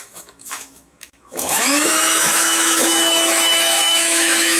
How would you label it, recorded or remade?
remade